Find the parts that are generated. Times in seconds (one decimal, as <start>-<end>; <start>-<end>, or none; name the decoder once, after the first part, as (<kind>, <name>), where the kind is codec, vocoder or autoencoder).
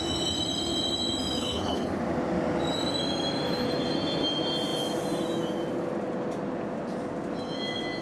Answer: 1.4-1.9 (codec, HILCodec)